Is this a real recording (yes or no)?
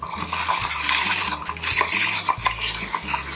yes